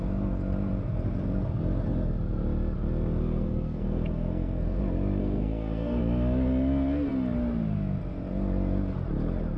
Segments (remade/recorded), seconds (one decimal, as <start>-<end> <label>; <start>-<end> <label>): 0.0-3.2 recorded; 3.2-4.8 remade; 4.8-5.2 recorded; 5.2-6.0 remade; 6.0-9.6 recorded

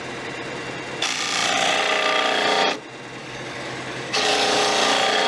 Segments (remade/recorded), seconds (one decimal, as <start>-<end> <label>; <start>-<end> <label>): 0.0-3.2 recorded; 3.2-4.6 remade; 4.6-5.3 recorded

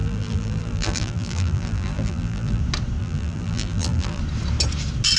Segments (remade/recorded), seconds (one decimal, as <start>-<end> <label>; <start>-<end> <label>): 0.0-2.6 remade; 2.6-3.0 recorded; 3.0-4.2 remade; 4.2-5.2 recorded

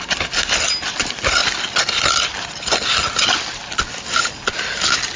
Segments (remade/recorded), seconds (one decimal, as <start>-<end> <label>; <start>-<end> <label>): 0.0-5.2 recorded